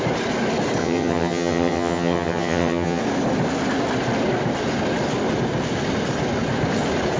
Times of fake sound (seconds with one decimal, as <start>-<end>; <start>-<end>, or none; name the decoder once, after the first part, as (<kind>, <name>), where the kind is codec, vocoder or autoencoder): 0.8-3.0 (vocoder, HiFi-GAN)